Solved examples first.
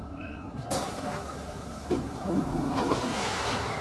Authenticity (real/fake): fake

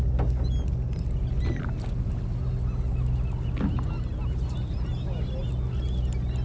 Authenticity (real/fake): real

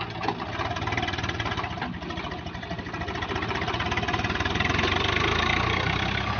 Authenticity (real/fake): real